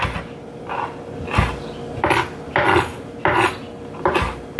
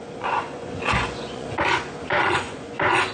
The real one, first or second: first